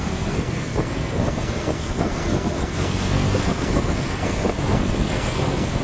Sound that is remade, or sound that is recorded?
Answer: remade